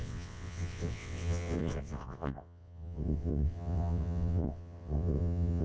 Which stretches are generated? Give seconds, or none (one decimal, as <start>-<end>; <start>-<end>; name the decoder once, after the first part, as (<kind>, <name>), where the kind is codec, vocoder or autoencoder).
0.0-5.6 (vocoder, WaveNeXt)